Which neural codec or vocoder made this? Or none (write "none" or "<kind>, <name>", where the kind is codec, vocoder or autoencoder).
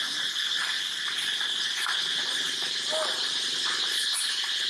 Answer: none